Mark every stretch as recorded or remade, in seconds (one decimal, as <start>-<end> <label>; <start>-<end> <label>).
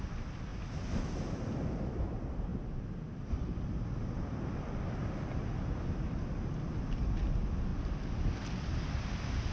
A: 0.0-9.5 recorded